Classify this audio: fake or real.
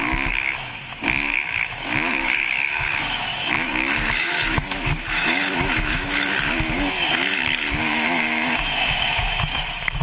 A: fake